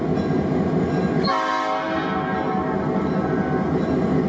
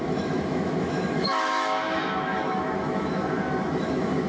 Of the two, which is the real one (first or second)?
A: first